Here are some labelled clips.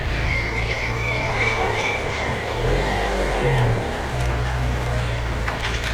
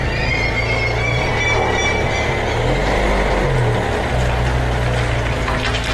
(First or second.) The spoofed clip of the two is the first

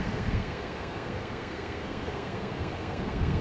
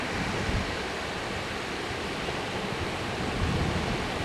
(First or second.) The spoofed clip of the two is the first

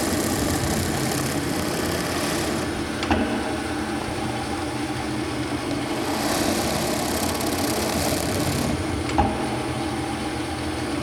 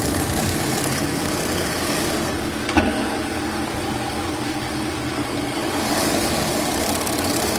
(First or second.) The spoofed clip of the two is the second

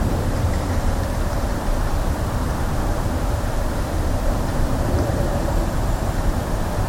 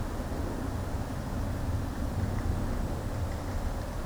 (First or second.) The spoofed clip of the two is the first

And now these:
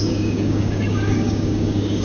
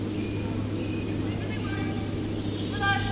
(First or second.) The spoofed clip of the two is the first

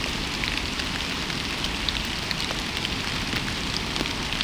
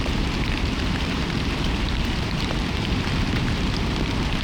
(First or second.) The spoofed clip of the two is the second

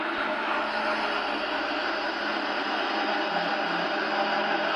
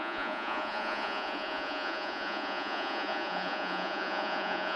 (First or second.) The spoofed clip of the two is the second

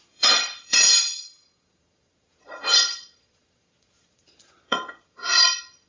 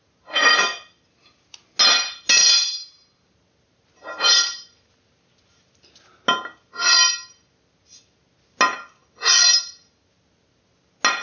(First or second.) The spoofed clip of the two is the first